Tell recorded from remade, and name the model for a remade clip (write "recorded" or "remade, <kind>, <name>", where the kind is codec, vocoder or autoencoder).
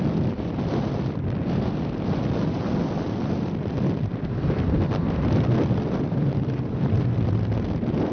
remade, vocoder, BigVGAN v2